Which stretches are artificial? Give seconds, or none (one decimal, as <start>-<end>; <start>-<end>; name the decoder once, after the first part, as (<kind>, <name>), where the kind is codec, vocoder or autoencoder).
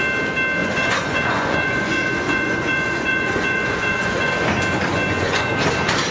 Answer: 0.6-4.3 (vocoder, Vocos); 4.9-5.5